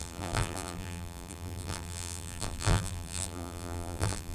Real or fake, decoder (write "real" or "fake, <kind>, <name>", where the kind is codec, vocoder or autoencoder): fake, vocoder, BigVGAN v2